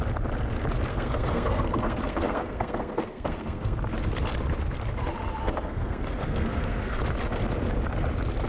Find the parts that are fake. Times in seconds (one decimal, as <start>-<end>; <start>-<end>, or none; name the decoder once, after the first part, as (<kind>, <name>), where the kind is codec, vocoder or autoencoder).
0.9-3.8 (codec, SNAC); 5.4-7.0